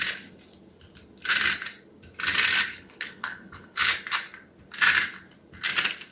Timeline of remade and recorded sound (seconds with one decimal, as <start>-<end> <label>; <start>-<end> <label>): 0.0-2.7 recorded; 2.7-3.9 remade; 3.9-6.1 recorded